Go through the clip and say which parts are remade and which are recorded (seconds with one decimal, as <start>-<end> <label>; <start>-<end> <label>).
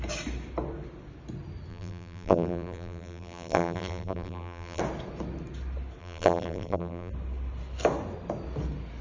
0.0-1.7 recorded; 1.7-4.8 remade; 4.8-6.0 recorded; 6.0-7.1 remade; 7.1-9.0 recorded